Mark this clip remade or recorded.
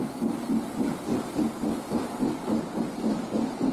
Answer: recorded